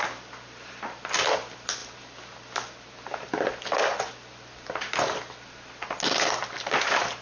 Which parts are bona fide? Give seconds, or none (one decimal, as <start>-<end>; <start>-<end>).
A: 0.0-7.2